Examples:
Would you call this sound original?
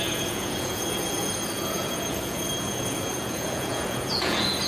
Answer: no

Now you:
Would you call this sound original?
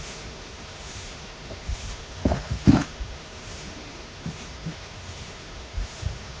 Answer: no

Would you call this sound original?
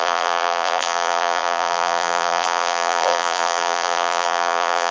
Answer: no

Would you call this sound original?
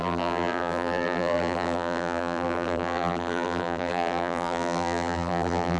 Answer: no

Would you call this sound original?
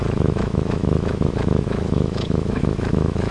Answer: no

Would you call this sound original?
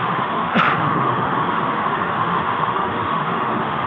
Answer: no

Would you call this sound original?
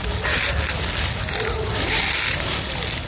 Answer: yes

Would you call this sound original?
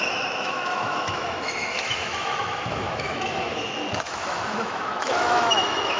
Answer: no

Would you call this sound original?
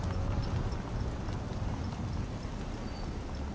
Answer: yes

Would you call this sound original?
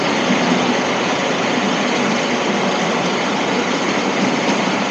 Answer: yes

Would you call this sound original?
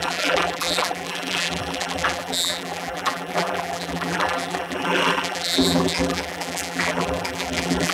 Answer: no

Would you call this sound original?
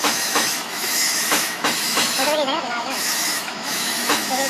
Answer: no